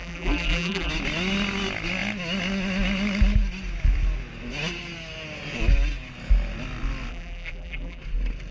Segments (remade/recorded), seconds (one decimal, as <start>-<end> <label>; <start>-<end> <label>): 0.0-0.9 remade; 0.9-7.1 recorded; 7.1-8.0 remade; 8.0-8.5 recorded

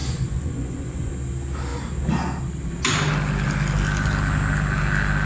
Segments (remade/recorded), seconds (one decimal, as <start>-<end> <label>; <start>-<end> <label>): 0.0-1.1 remade; 1.1-5.3 recorded

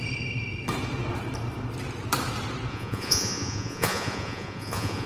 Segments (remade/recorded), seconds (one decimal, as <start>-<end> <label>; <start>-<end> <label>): 0.0-2.7 recorded; 2.7-5.1 remade

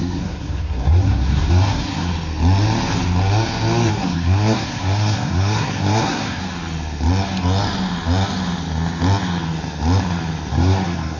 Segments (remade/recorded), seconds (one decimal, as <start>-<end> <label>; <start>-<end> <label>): 0.0-2.1 remade; 2.1-3.9 recorded; 3.9-6.4 remade; 6.4-10.5 recorded; 10.5-11.2 remade